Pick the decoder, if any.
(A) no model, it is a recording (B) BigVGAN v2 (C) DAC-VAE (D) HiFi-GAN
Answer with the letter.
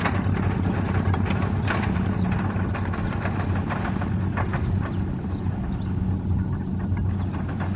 A